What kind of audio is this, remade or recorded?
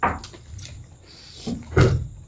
recorded